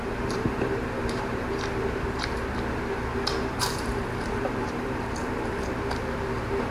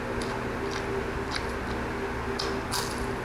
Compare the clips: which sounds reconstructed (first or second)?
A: first